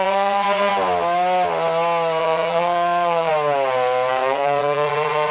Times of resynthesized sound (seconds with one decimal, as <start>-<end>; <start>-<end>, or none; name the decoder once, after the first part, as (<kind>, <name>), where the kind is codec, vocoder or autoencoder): 0.0-0.7 (vocoder, Vocos); 2.2-3.3; 4.1-5.3